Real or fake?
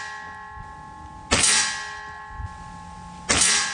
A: real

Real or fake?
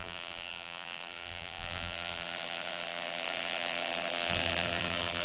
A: fake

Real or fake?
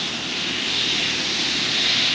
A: real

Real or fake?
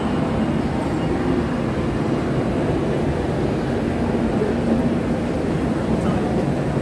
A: real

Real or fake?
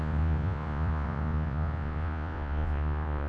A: fake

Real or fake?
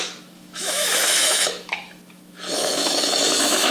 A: fake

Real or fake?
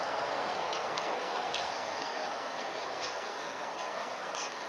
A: fake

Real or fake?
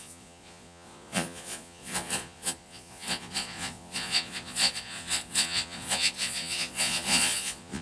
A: fake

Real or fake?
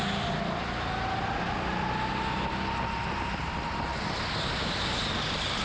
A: real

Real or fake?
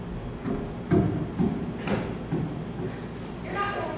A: real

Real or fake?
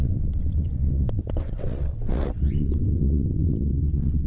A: fake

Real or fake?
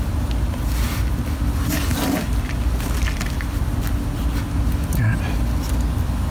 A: real